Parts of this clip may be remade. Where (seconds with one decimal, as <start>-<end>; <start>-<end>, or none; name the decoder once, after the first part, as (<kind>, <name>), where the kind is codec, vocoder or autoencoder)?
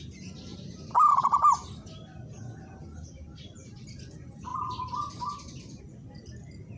0.5-1.1 (vocoder, BigVGAN v2); 4.5-5.8